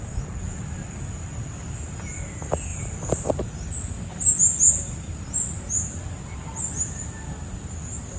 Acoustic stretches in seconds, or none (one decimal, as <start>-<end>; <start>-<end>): 0.0-2.7; 3.3-8.2